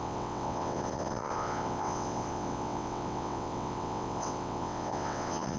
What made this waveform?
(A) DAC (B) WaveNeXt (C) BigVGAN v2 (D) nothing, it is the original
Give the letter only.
B